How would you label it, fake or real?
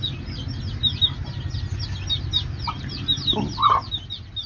real